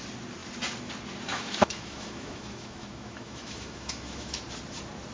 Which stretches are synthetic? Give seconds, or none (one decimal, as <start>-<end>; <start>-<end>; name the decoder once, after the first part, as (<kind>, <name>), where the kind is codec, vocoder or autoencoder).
1.3-4.4 (autoencoder, DAC-VAE)